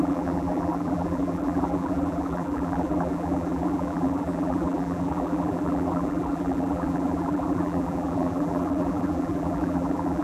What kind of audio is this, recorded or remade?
remade